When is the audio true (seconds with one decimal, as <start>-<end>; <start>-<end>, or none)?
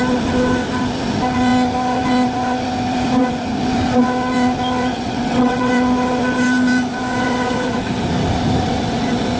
0.0-4.9; 5.7-9.4